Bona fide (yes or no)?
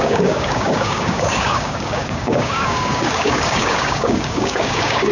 no